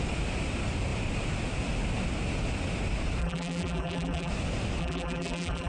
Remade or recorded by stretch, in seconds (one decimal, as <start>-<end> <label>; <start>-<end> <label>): 0.0-3.2 recorded; 3.2-4.3 remade; 4.3-4.8 recorded; 4.8-5.7 remade